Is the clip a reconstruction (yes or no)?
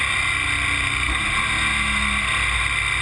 no